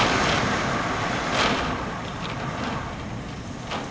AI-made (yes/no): no